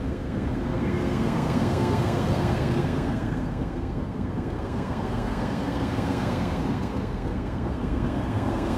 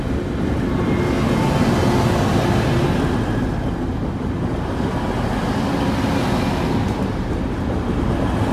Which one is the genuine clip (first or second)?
second